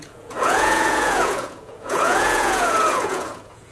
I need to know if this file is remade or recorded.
remade